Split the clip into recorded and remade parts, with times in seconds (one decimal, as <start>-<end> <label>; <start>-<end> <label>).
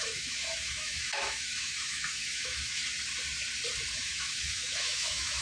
0.0-2.8 remade; 2.8-3.9 recorded; 3.9-5.4 remade